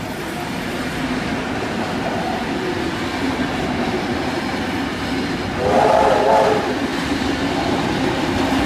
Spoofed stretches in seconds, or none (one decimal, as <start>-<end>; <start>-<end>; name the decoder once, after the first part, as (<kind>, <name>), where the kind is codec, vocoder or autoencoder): none